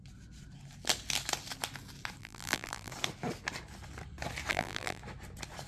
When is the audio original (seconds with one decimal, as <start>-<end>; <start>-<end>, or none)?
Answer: 0.0-2.2; 2.9-4.5; 5.0-5.7